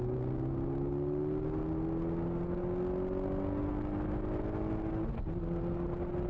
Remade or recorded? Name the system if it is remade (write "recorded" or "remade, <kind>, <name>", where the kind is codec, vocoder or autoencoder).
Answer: recorded